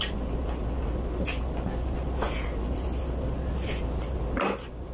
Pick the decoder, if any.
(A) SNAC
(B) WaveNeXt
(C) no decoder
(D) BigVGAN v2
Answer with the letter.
C